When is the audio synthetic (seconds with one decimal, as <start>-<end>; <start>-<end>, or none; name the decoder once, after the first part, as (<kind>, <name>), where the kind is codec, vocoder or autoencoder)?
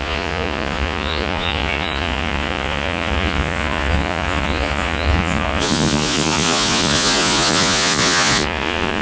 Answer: 0.0-9.0 (vocoder, Vocos)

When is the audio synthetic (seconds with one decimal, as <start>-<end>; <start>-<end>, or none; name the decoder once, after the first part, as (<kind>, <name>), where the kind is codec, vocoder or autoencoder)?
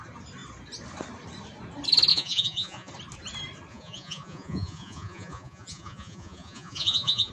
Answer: 2.1-2.9 (vocoder, Vocos); 3.7-7.3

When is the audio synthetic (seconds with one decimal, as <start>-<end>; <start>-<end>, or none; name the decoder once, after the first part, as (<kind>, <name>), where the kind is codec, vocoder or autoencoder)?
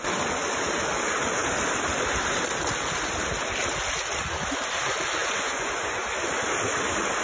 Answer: 5.2-6.0 (vocoder, Vocos)